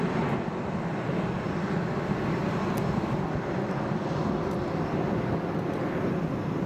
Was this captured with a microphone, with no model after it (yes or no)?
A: yes